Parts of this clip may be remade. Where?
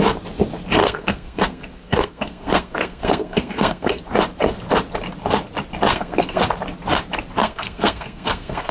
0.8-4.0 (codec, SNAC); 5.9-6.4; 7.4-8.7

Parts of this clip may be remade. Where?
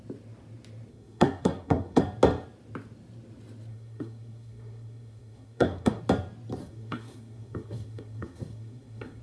0.9-2.0 (codec, SNAC); 3.7-6.0; 6.6-9.2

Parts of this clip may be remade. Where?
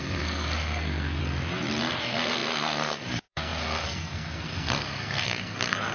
0.0-1.2 (codec, SNAC); 1.8-5.9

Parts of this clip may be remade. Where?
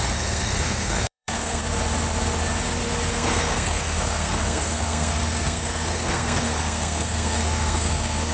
0.0-1.6 (codec, SNAC); 3.1-8.3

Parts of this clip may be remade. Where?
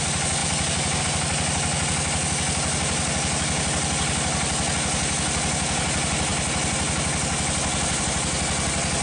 none